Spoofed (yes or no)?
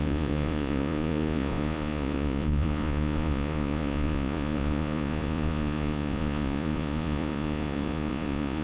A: yes